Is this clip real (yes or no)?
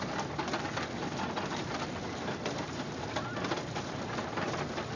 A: no